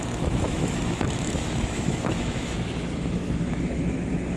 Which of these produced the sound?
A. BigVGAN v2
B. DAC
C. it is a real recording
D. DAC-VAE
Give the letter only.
D